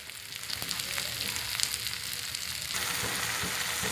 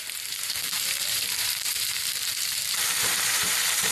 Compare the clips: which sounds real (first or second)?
first